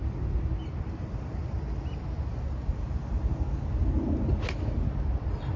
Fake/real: real